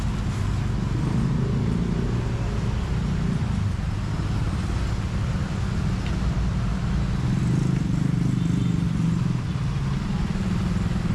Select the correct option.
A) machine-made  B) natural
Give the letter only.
B